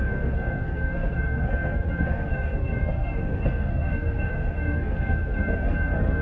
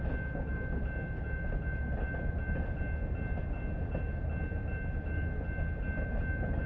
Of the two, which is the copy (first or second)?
first